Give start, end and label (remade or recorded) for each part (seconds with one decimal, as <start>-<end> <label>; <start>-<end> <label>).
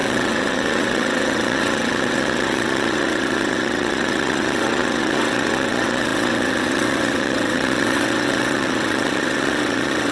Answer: 0.0-10.1 remade